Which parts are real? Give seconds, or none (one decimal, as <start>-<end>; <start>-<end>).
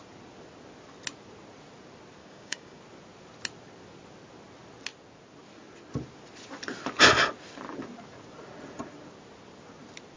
0.0-2.2; 2.8-10.2